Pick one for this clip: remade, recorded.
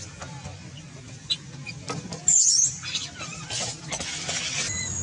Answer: recorded